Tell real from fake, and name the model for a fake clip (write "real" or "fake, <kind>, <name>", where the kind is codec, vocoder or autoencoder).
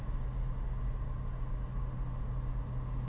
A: real